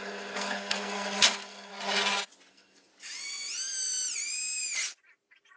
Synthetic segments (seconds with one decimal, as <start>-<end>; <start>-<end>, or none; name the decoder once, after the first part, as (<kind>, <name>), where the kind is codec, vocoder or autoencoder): 0.0-1.7 (codec, SNAC); 2.5-2.9